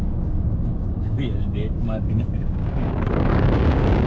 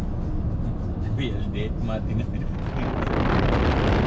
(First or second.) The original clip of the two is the second